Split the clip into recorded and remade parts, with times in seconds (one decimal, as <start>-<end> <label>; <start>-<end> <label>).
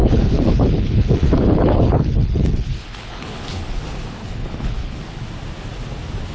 0.0-3.8 remade; 3.8-4.2 recorded; 4.2-5.0 remade; 5.0-6.3 recorded